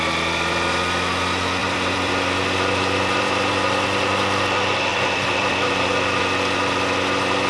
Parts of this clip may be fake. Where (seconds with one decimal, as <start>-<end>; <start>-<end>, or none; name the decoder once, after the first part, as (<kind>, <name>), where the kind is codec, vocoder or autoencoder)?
1.6-3.5 (vocoder, BigVGAN v2); 4.9-6.2